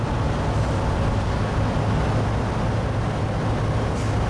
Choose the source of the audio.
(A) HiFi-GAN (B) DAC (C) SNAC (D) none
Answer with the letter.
D